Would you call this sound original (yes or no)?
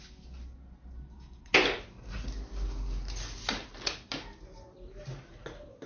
yes